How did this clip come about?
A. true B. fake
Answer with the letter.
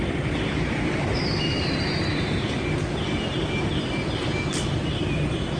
A